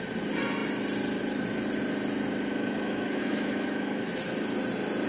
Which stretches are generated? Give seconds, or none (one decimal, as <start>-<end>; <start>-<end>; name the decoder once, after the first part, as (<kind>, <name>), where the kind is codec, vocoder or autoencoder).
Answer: 2.5-4.1 (autoencoder, DAC-VAE)